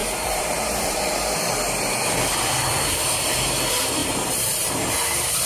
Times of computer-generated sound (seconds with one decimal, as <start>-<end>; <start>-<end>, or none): 0.0-2.0; 4.0-4.8